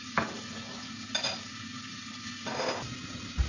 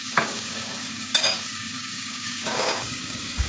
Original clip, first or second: first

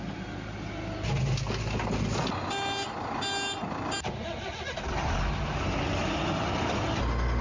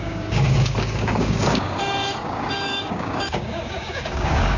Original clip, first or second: first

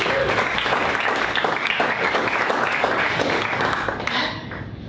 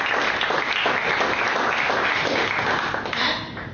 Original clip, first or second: second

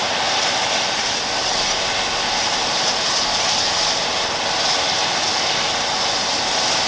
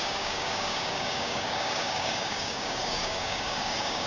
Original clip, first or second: first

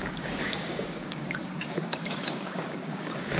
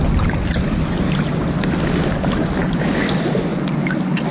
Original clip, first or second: second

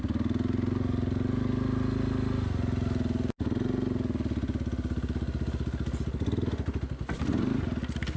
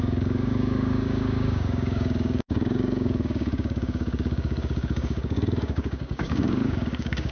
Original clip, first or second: first